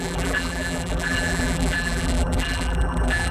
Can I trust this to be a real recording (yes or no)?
no